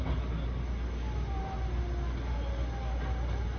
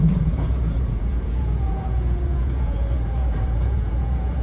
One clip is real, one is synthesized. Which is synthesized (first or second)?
second